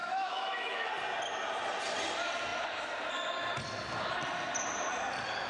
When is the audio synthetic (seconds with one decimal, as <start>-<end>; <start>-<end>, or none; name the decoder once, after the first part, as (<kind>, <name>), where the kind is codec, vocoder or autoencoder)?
0.0-0.9 (autoencoder, DAC-VAE)